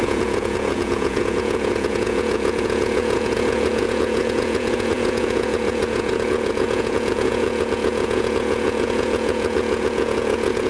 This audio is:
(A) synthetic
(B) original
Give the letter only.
A